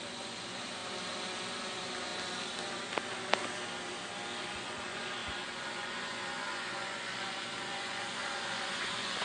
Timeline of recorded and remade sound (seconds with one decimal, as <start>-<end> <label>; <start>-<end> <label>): 0.0-0.8 remade; 0.8-1.6 recorded; 1.6-2.1 remade; 2.1-4.4 recorded; 4.4-9.2 remade